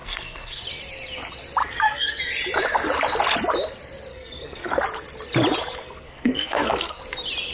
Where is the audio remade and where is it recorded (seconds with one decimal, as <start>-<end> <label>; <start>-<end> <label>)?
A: 0.0-0.6 remade; 0.6-1.6 recorded; 1.6-2.2 remade; 2.2-4.1 recorded; 4.1-4.8 remade; 4.8-5.8 recorded; 5.8-7.0 remade; 7.0-7.5 recorded